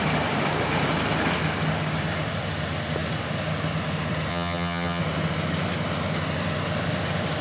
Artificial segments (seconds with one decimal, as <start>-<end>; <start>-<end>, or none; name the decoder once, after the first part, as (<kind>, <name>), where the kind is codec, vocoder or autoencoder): 4.3-5.0 (vocoder, HiFi-GAN)